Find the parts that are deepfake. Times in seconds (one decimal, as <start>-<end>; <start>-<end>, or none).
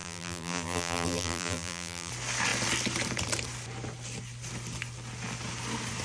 0.0-2.1